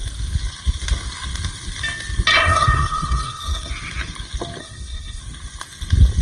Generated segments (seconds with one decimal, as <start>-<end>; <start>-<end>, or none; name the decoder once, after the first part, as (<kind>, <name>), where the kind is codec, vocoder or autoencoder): 2.3-3.7 (codec, SNAC); 4.6-5.2